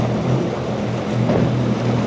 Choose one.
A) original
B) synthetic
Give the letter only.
A